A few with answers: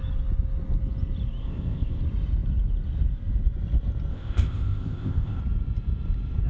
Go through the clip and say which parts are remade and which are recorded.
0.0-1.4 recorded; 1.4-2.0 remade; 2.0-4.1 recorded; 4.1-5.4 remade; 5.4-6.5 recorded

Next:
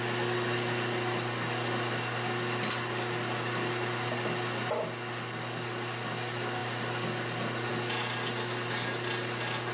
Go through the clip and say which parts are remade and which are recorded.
0.0-9.7 recorded